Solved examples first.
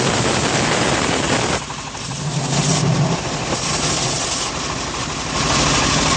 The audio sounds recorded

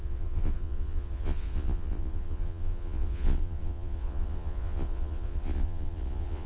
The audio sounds remade